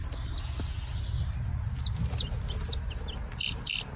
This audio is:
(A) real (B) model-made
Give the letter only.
A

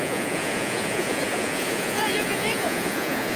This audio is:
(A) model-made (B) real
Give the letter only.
A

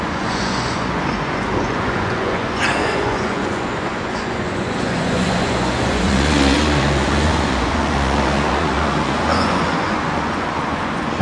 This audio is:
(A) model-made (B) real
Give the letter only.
A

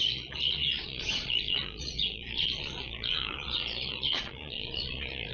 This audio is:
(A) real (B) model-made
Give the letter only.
B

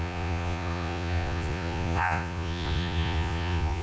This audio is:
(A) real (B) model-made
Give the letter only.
B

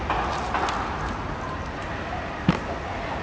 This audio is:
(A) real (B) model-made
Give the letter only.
A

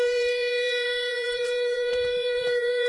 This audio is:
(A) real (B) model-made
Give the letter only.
B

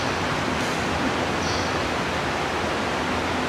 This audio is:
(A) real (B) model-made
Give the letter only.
A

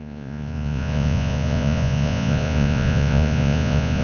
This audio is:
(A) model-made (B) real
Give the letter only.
A